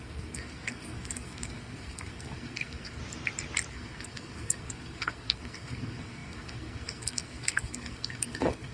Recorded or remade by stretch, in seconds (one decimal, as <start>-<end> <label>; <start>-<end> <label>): 0.0-3.0 remade; 3.0-3.7 recorded; 3.7-8.7 remade

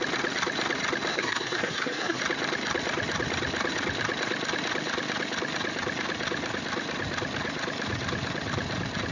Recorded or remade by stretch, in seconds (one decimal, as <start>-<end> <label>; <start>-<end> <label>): 0.0-1.1 recorded; 1.1-2.2 remade; 2.2-9.1 recorded

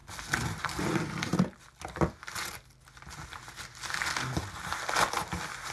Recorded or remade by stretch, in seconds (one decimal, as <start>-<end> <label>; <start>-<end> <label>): 0.0-5.7 recorded